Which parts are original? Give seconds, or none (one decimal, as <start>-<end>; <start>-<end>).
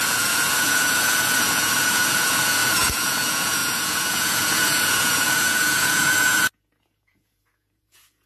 none